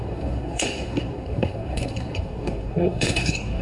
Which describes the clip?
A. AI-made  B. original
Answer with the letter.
A